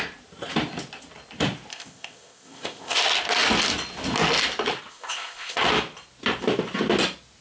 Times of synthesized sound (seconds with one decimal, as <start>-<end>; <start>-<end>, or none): 1.7-3.0; 4.9-5.6